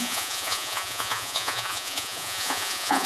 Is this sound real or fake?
fake